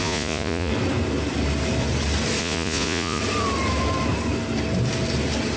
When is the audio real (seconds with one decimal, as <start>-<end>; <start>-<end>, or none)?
0.7-2.4; 3.2-5.6

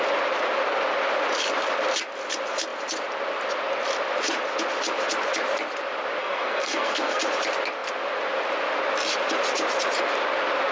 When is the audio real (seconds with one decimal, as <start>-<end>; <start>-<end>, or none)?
0.0-6.2; 7.2-10.7

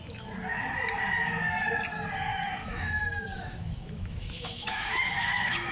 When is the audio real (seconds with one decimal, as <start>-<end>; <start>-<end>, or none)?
0.0-2.3

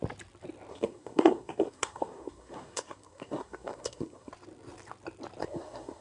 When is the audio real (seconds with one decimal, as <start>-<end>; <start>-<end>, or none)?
0.0-0.7; 4.3-5.4

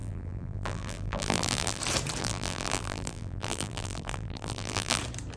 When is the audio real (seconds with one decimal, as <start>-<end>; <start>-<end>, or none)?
1.8-2.2; 5.0-5.4

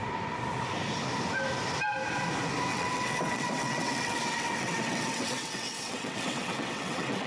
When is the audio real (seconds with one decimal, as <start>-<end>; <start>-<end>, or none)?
0.0-2.7

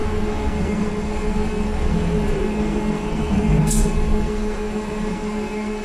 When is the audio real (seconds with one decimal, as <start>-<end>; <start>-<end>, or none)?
none